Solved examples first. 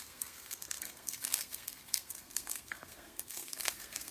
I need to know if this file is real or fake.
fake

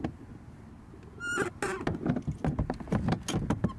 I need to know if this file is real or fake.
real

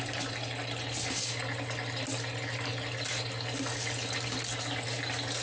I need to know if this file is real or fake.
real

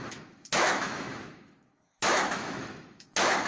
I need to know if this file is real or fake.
fake